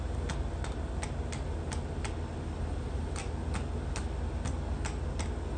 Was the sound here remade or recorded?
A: recorded